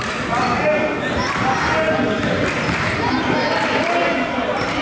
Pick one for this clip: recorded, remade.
recorded